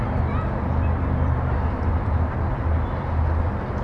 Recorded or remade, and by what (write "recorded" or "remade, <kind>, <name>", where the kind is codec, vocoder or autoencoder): remade, vocoder, BigVGAN v2